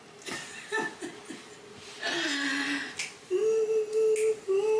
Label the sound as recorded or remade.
recorded